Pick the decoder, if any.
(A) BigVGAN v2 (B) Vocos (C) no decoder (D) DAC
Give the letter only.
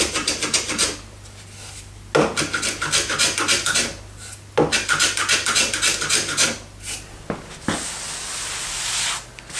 C